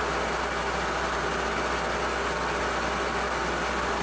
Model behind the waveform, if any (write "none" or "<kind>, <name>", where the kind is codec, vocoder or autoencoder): none